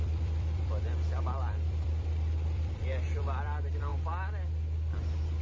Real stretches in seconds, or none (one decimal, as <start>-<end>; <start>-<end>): 3.9-5.4